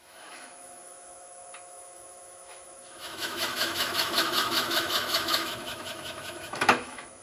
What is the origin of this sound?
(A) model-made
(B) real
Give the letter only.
A